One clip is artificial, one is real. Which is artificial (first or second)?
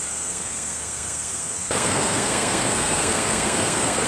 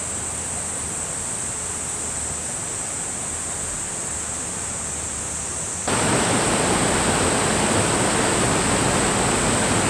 first